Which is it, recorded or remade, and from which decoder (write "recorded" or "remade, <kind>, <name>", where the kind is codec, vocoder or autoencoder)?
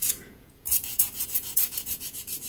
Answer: remade, vocoder, Vocos